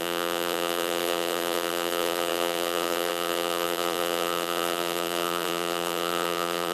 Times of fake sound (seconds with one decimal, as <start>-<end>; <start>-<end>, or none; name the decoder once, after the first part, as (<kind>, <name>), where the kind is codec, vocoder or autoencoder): 0.0-6.7 (vocoder, BigVGAN v2)